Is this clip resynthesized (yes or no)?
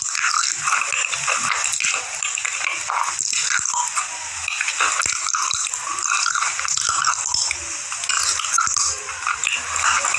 no